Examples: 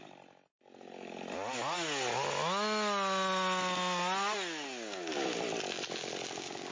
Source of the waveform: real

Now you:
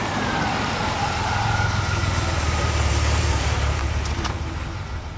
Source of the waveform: fake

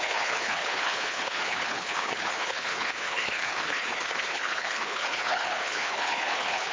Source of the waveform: fake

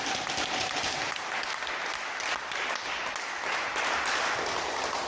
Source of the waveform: real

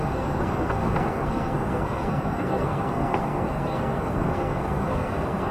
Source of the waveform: fake